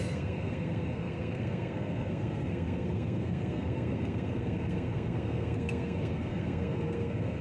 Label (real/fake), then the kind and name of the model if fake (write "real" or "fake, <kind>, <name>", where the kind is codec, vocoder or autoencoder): fake, codec, SNAC